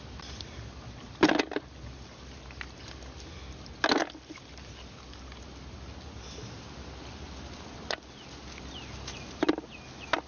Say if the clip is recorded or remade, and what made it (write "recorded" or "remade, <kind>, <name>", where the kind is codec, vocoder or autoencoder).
recorded